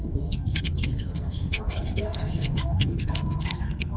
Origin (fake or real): fake